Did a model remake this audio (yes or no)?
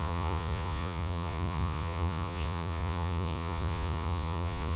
yes